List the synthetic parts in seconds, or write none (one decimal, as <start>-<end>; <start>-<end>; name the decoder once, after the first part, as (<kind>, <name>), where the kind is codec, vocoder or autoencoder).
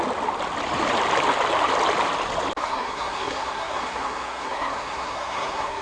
2.6-5.8 (codec, SNAC)